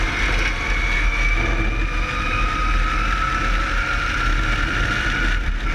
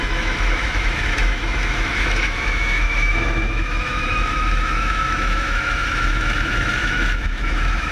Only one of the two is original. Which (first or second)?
first